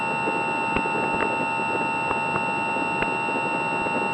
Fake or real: real